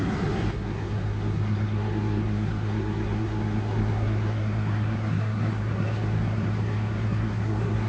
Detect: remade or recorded remade